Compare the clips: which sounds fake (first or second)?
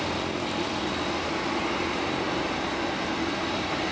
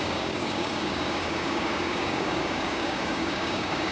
second